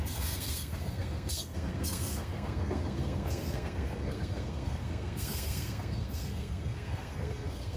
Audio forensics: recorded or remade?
remade